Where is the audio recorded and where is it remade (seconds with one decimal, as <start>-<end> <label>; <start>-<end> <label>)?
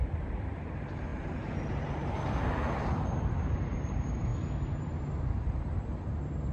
0.0-4.3 remade; 4.3-5.3 recorded; 5.3-6.5 remade